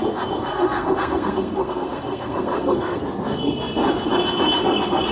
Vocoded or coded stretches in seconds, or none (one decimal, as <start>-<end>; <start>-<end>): 0.4-3.0